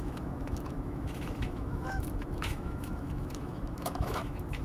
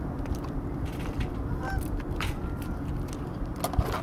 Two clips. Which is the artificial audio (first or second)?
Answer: first